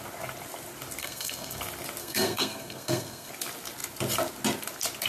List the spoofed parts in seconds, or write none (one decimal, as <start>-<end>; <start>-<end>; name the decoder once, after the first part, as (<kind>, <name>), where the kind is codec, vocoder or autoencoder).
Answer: 1.0-1.6 (codec, SNAC); 2.0-3.3